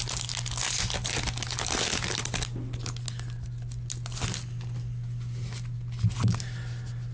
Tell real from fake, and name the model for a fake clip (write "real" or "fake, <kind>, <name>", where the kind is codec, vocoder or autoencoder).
real